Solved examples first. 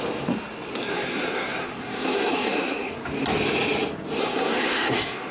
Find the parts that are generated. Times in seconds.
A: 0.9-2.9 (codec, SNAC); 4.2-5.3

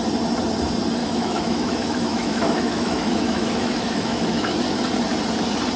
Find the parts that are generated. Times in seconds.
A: 1.0-4.5 (autoencoder, DAC-VAE)